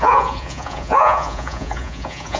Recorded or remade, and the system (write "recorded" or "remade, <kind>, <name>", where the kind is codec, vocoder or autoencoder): remade, vocoder, Vocos